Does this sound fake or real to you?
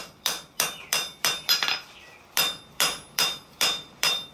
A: fake